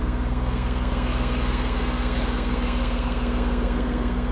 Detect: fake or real fake